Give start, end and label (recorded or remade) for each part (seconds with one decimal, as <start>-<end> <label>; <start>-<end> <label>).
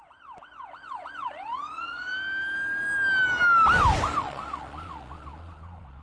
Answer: 0.0-2.1 remade; 2.1-4.2 recorded; 4.2-6.0 remade